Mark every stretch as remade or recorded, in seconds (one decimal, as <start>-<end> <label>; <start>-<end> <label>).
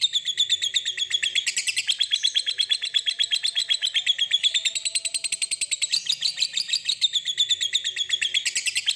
0.0-6.3 recorded; 6.3-7.5 remade; 7.5-9.0 recorded